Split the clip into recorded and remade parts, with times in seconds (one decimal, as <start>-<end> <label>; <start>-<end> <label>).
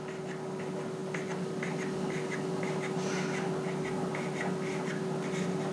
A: 0.0-5.7 recorded